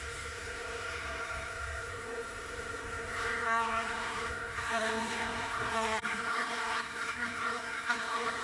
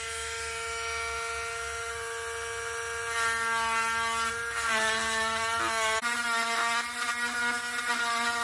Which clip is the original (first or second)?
second